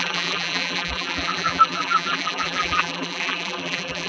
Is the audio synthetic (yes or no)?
yes